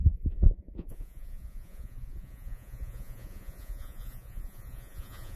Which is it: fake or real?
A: fake